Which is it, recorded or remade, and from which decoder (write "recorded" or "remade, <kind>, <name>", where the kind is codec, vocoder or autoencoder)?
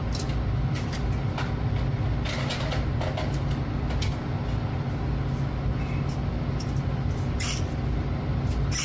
recorded